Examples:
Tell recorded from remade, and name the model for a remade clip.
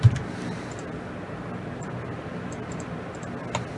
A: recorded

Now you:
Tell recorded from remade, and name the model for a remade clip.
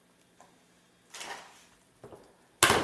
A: recorded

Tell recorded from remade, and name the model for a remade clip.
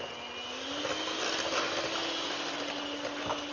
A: recorded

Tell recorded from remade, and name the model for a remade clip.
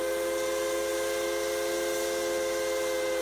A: recorded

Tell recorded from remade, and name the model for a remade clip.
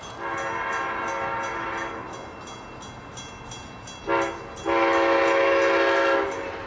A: recorded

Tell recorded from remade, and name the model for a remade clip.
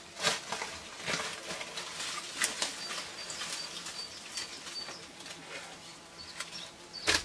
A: recorded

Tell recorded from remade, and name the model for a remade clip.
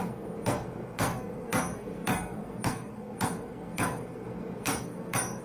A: remade, codec, SNAC